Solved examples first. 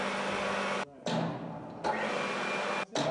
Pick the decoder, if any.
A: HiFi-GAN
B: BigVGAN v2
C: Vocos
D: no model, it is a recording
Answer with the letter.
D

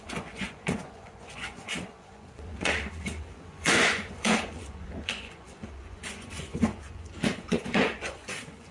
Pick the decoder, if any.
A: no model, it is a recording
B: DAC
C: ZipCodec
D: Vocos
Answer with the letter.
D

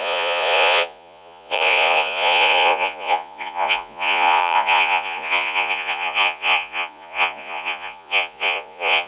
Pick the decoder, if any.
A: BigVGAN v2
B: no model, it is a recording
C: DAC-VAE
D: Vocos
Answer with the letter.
D